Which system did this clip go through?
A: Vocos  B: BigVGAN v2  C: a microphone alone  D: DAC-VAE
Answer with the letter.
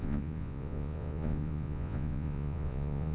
A